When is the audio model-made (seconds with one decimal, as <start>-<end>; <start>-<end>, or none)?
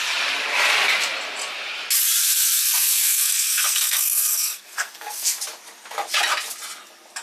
2.2-5.4